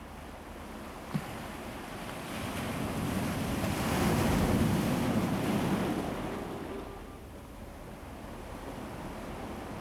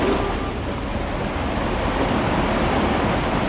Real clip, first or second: first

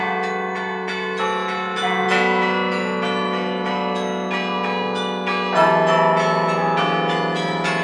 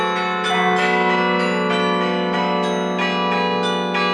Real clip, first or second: second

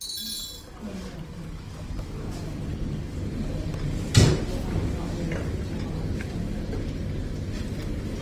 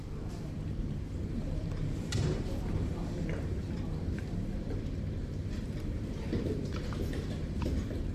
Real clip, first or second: first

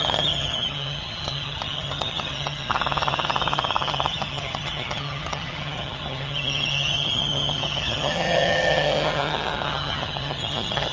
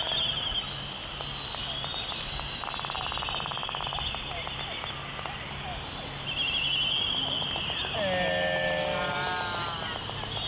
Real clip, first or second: second